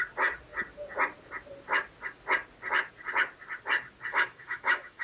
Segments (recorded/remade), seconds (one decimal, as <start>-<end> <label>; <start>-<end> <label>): 0.0-4.1 recorded; 4.1-5.0 remade